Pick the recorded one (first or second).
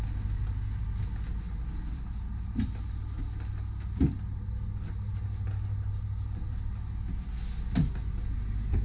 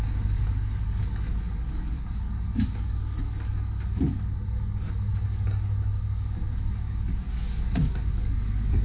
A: first